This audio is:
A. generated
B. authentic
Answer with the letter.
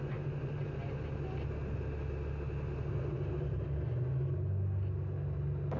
B